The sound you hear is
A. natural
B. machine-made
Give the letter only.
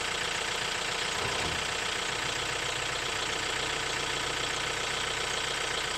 A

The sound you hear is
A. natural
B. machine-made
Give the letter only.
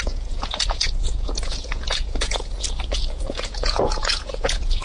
B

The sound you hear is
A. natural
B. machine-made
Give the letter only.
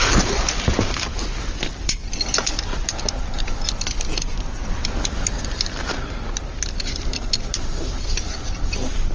A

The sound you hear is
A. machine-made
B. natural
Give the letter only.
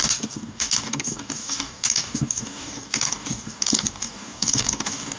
A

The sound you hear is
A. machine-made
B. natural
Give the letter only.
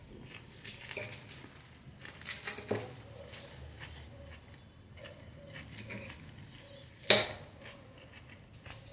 B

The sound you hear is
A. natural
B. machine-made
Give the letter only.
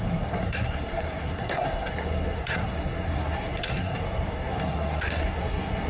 B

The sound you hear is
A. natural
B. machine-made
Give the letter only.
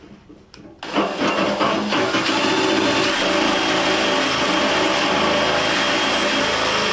A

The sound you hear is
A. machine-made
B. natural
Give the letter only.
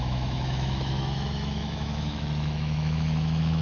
A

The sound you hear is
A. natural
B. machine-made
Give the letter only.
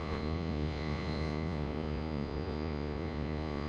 B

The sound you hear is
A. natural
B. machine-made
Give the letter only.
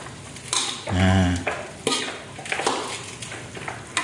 A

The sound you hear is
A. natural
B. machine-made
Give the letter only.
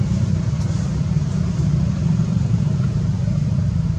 B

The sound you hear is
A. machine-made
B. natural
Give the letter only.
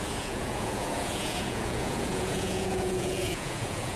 A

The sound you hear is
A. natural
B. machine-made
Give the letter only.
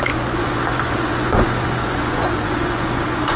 B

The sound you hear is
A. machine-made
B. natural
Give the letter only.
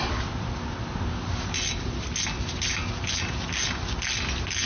B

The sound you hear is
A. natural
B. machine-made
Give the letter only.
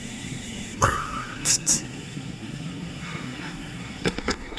B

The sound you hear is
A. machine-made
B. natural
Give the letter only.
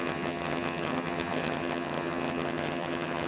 A